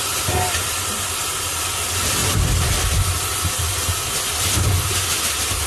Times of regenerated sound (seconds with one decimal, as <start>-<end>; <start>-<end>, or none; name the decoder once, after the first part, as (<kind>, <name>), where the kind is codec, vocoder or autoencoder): 0.0-2.2 (vocoder, BigVGAN v2)